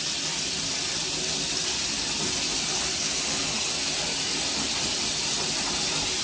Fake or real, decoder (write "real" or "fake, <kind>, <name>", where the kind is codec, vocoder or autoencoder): real